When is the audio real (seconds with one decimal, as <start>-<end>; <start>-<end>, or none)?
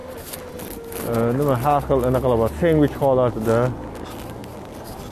0.0-5.1